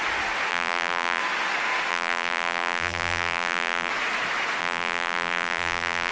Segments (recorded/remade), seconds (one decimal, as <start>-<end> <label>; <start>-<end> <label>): 0.0-0.5 recorded; 0.5-1.2 remade; 1.2-1.9 recorded; 1.9-3.9 remade; 3.9-4.6 recorded; 4.6-6.1 remade